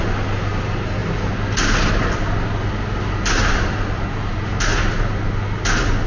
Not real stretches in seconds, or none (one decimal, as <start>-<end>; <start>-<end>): 3.4-4.3